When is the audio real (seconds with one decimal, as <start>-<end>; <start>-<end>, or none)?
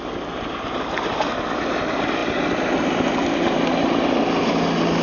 0.0-5.0